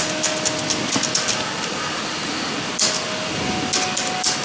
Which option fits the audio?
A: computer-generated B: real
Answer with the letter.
B